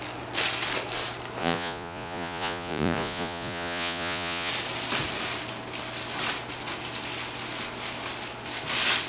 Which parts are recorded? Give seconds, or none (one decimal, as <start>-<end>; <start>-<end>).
0.0-1.4; 4.5-9.1